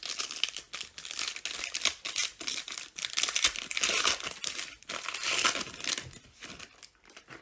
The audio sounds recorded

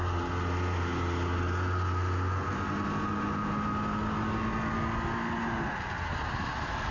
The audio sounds recorded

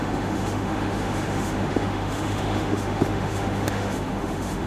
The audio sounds remade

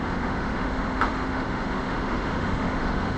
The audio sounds remade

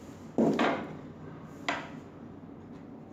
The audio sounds recorded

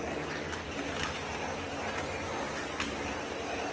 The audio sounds recorded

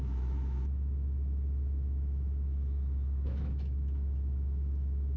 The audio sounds remade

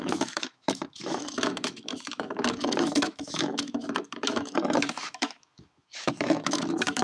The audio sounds remade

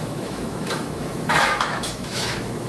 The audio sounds remade